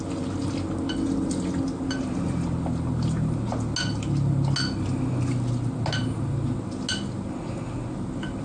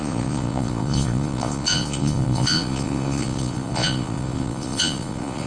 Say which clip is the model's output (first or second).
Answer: second